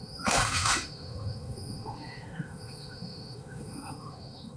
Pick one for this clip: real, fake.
fake